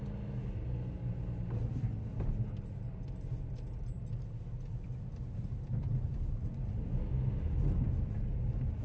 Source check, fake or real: real